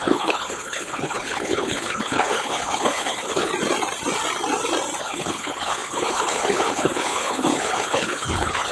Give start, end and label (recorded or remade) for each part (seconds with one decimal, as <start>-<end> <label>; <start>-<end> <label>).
0.0-3.5 remade; 3.5-5.0 recorded; 5.0-8.7 remade

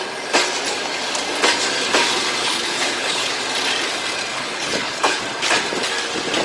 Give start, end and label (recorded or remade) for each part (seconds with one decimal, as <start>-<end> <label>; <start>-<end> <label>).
0.0-2.4 recorded; 2.4-3.4 remade; 3.4-4.3 recorded; 4.3-5.2 remade; 5.2-6.4 recorded